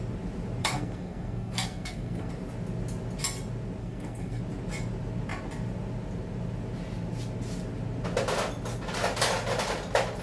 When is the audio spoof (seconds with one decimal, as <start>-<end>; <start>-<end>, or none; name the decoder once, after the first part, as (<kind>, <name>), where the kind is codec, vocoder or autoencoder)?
0.6-2.3 (codec, SNAC); 3.8-4.4